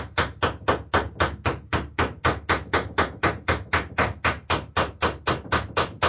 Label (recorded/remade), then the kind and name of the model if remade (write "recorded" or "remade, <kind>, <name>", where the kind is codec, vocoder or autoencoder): recorded